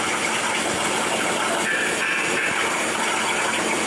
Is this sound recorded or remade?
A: recorded